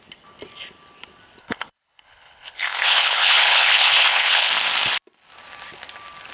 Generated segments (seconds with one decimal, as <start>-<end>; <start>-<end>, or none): 1.4-4.5